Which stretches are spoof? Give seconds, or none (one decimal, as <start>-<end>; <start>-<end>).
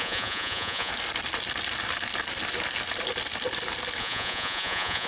0.0-0.9; 4.0-5.1